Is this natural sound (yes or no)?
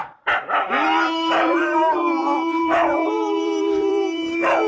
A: no